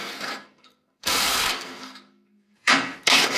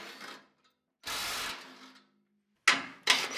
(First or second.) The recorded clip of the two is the second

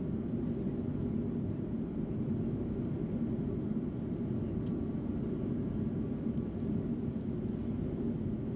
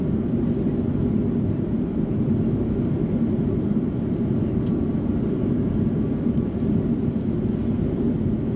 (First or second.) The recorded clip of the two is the first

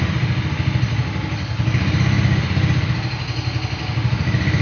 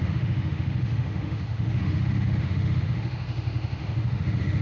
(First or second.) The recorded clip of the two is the first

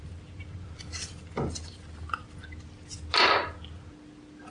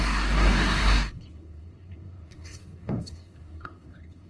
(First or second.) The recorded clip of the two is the first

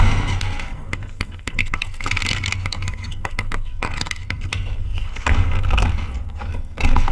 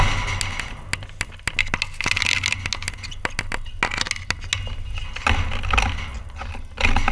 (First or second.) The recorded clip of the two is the second